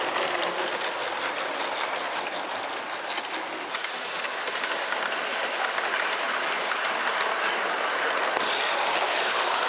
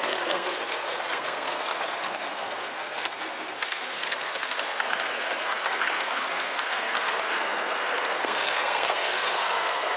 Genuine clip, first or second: first